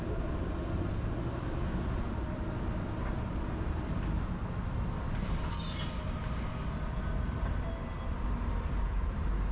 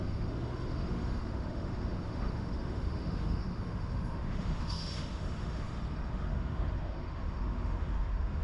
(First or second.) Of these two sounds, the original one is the first